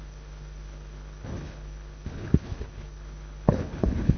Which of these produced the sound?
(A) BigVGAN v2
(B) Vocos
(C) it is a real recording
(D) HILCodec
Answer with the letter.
D